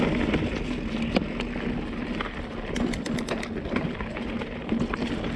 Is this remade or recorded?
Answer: recorded